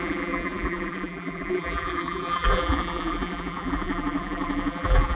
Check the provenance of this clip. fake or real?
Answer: fake